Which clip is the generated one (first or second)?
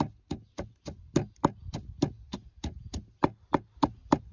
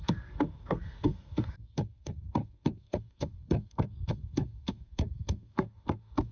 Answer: second